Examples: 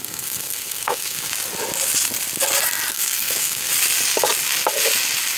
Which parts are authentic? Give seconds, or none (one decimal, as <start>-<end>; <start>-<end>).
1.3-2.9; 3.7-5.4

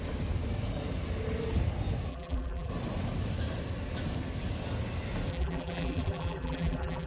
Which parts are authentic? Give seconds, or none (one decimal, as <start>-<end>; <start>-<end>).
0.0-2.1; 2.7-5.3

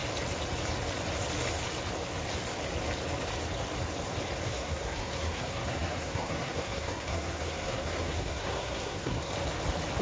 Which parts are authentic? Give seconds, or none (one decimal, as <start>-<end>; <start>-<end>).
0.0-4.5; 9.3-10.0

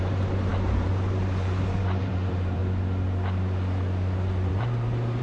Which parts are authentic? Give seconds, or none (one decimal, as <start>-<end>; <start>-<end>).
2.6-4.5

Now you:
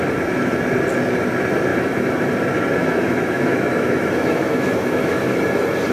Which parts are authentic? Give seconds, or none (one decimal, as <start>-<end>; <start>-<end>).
0.0-1.7; 2.3-2.8; 5.4-5.9

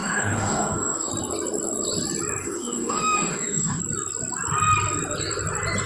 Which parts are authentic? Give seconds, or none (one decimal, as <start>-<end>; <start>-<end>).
1.1-2.4; 3.8-5.9

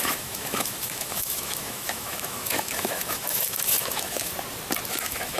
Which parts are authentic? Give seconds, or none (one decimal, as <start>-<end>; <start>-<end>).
4.3-4.9